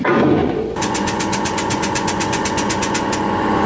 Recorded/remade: remade